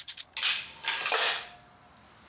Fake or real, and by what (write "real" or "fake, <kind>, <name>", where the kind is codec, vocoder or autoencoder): real